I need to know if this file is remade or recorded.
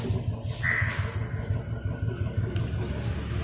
recorded